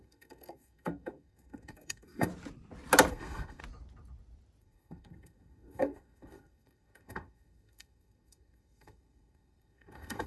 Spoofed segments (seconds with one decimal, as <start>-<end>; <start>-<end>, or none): 0.0-2.3; 3.1-3.6; 4.6-10.3